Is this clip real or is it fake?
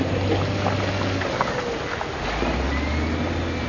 real